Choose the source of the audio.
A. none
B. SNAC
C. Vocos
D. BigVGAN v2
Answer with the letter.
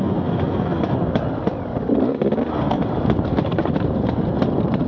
A